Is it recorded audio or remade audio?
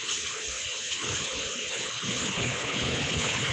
remade